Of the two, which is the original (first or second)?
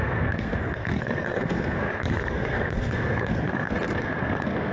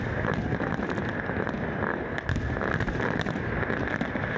second